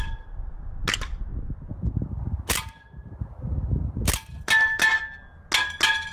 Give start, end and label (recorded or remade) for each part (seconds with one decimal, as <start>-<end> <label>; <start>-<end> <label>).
0.0-6.1 recorded